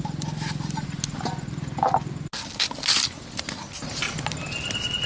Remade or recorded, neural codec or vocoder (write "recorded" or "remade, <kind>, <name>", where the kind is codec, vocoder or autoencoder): recorded